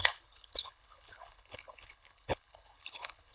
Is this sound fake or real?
fake